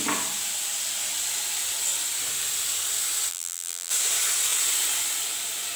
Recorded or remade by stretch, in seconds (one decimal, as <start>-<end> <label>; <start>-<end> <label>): 0.0-3.3 recorded; 3.3-3.9 remade; 3.9-5.8 recorded